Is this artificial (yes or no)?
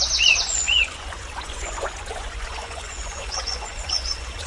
yes